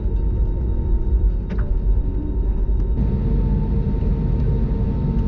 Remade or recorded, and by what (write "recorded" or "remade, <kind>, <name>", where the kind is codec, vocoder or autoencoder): recorded